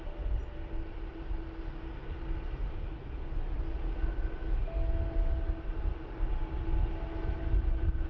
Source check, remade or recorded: recorded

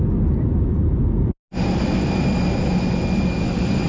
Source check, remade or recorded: recorded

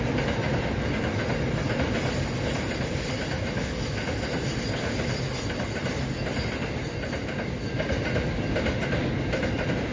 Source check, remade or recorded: recorded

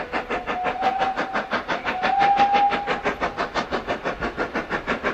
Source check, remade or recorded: recorded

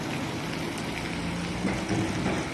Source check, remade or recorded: recorded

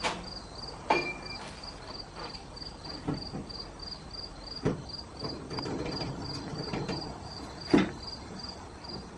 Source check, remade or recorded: recorded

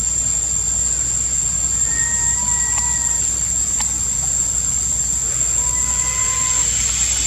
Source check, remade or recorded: recorded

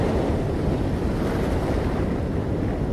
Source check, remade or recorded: recorded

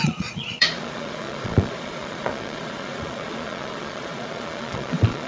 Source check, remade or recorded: remade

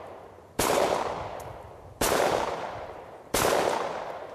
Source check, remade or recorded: remade